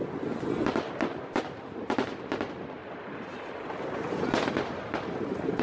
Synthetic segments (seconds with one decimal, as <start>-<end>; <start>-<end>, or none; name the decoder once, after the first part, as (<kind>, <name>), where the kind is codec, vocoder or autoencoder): 2.8-5.6 (vocoder, BigVGAN v2)